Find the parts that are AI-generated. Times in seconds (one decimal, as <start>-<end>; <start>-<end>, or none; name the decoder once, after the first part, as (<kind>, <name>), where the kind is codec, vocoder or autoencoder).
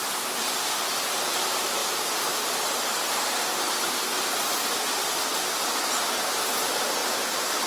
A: 4.1-5.9 (vocoder, BigVGAN v2)